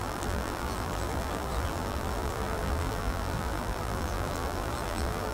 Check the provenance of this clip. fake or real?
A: fake